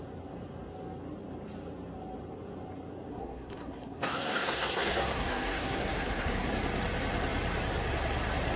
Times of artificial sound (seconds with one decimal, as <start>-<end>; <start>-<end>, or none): 3.1-6.5